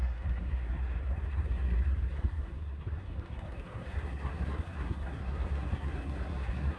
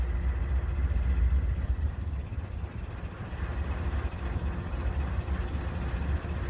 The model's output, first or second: first